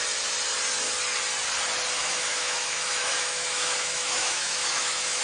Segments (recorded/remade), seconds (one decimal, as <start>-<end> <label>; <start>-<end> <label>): 0.0-2.0 recorded; 2.0-5.2 remade